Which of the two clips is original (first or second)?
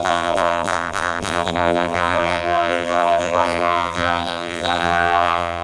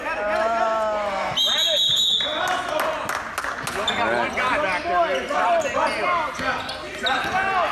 second